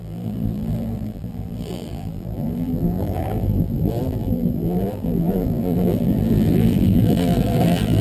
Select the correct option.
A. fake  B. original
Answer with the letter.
A